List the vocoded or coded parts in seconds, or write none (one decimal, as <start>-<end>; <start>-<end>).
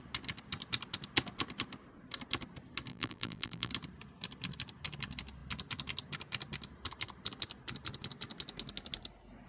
2.9-3.7